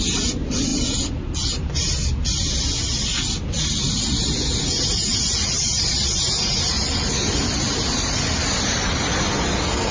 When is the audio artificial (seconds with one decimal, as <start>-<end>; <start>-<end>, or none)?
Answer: none